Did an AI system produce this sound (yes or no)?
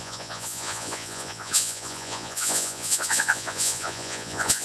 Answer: yes